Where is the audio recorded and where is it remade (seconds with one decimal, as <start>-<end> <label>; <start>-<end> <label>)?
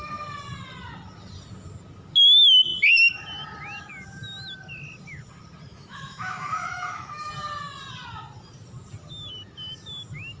0.0-5.7 recorded; 5.7-7.3 remade; 7.3-10.4 recorded